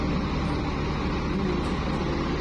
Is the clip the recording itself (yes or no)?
yes